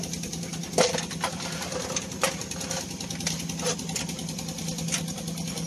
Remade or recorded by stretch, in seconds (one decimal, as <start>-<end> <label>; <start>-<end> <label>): 0.0-5.7 recorded